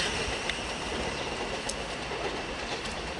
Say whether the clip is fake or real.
real